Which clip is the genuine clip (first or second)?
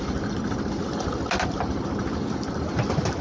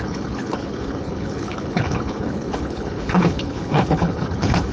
first